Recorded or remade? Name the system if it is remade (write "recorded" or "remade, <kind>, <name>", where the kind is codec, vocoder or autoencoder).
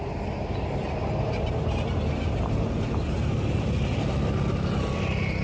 recorded